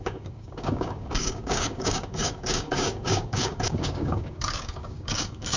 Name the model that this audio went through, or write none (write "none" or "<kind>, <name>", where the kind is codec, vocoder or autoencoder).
codec, DAC